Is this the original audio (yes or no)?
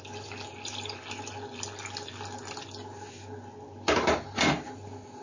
yes